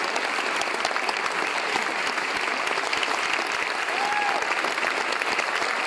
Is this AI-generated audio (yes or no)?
no